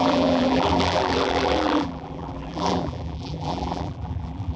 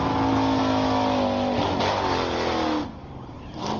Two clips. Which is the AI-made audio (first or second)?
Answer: first